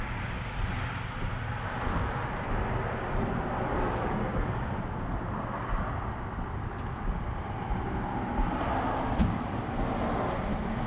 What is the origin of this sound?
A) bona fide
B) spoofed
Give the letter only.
A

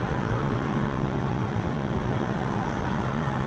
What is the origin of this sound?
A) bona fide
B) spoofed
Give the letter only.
B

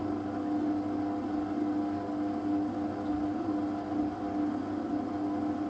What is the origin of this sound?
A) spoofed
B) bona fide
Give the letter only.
B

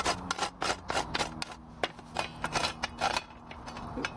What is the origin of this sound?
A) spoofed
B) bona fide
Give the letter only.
B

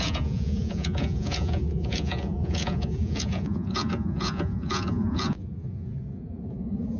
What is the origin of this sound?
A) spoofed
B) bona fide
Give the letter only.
A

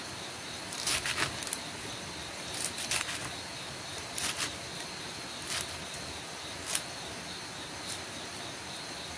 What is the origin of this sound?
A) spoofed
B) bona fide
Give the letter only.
B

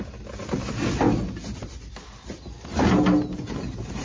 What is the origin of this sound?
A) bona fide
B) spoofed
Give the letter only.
A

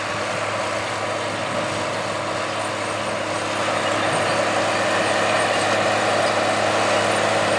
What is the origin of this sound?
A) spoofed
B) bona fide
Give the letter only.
B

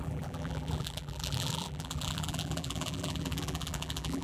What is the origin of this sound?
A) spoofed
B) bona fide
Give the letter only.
A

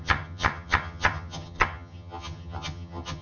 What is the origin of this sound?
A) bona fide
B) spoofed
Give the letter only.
B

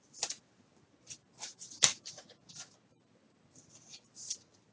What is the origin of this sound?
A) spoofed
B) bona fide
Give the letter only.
B